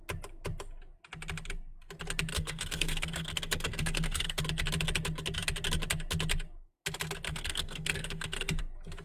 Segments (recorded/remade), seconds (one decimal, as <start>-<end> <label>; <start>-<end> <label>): 0.0-2.3 recorded; 2.3-4.4 remade; 4.4-7.3 recorded; 7.3-8.6 remade; 8.6-9.0 recorded